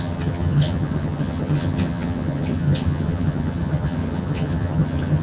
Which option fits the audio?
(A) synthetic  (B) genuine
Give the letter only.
A